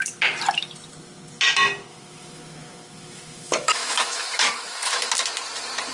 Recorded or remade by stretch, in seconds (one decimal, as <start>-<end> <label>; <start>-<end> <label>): 0.0-1.9 recorded; 1.9-5.1 remade; 5.1-5.9 recorded